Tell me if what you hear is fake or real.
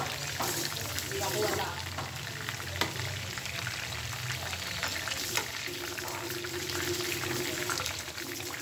real